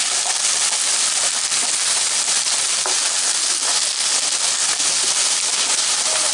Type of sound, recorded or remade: recorded